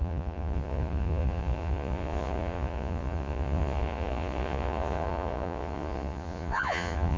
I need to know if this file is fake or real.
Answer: fake